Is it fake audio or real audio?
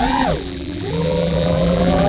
fake